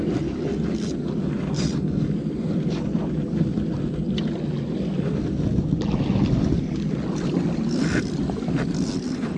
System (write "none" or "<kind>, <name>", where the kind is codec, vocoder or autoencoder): none